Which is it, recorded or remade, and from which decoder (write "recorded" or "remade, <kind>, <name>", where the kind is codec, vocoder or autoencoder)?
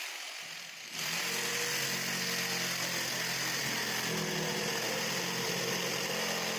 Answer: recorded